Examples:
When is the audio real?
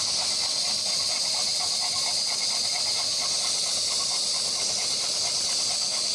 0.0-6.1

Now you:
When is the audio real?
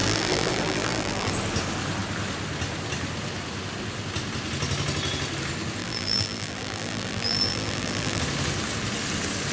1.3-5.8; 8.2-9.5